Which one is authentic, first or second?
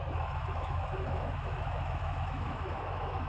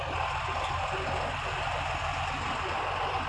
second